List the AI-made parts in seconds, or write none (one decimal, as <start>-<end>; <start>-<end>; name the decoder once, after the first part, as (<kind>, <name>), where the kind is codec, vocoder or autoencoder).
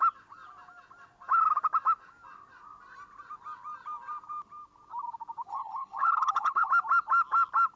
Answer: 5.5-6.7 (codec, HILCodec)